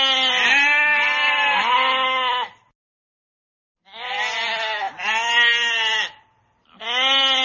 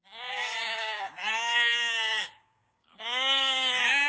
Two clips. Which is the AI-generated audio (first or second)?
second